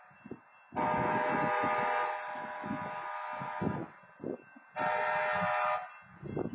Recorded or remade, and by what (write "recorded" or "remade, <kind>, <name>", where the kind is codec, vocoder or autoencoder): recorded